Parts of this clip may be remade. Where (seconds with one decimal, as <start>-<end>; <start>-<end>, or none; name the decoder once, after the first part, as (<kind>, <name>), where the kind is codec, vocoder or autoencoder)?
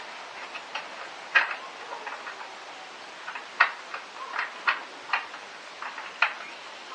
none